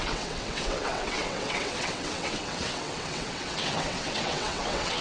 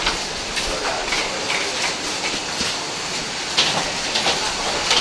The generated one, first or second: first